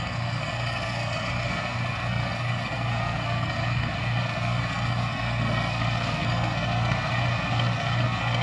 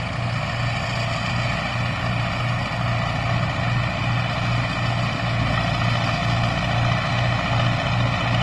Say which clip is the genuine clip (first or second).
second